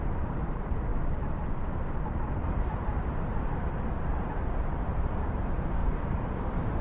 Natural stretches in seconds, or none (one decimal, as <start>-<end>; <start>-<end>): 5.8-6.8